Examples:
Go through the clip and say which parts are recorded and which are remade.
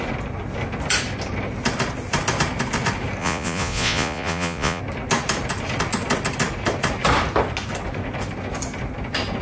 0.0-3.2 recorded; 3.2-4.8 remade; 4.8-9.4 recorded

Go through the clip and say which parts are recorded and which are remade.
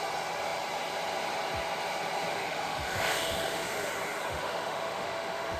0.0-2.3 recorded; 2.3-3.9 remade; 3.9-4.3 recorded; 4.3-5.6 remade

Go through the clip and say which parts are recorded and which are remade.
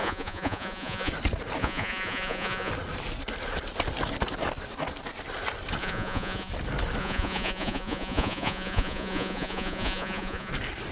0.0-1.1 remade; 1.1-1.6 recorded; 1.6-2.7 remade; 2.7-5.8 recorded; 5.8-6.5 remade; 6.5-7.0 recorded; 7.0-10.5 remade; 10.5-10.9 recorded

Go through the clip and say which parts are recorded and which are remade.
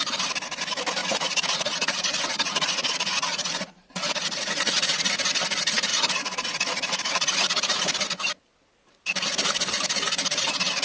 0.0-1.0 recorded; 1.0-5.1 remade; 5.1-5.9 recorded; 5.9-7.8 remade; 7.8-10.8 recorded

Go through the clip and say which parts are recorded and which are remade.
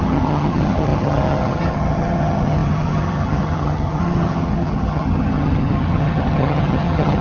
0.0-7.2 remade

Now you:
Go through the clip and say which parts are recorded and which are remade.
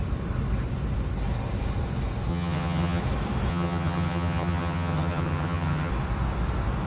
0.0-2.3 recorded; 2.3-3.0 remade; 3.0-3.5 recorded; 3.5-5.9 remade; 5.9-6.9 recorded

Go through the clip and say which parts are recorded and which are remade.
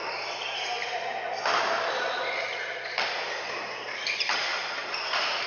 0.0-3.3 recorded; 3.3-5.5 remade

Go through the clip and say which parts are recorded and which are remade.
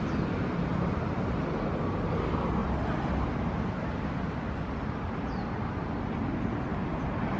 0.0-7.4 recorded